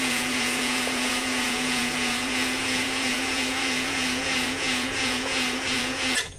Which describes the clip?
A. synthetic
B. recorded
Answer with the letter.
A